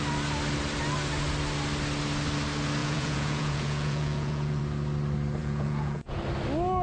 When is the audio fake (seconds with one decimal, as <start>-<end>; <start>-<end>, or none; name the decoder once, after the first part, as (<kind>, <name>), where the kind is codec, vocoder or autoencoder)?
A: 2.8-4.6 (vocoder, Vocos); 5.4-6.2